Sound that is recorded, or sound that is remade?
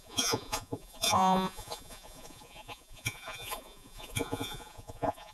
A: remade